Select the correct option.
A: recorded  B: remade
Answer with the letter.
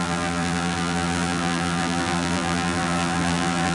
B